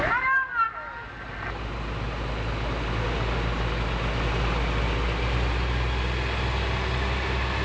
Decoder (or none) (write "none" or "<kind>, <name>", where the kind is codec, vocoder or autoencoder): none